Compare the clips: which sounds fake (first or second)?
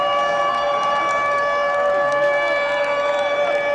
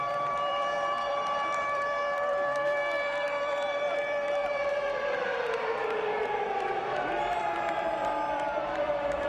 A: second